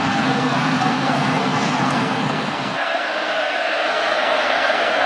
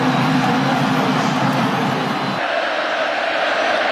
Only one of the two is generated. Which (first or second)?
first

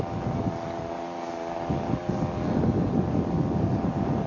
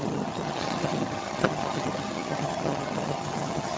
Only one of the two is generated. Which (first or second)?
second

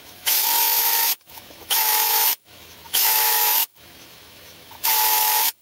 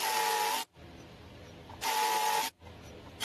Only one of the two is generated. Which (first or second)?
first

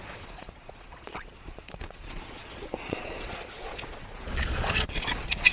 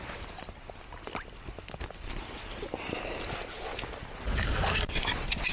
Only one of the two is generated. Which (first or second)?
first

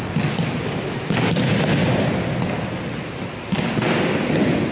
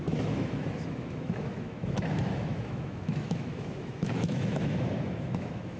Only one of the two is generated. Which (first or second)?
second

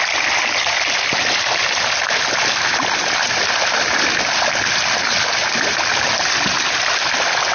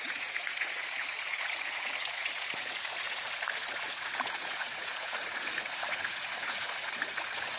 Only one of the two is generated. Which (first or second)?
second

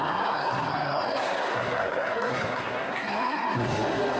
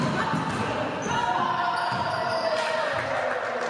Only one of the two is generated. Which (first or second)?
first